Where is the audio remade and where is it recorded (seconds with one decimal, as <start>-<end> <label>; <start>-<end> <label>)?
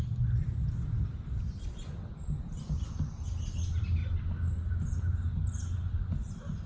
0.0-6.7 recorded